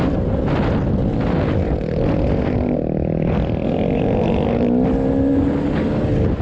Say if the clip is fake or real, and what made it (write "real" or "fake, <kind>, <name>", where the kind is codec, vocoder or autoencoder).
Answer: real